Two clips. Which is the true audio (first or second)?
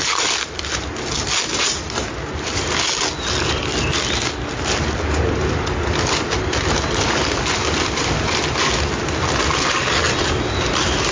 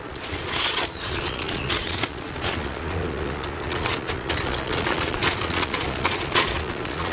first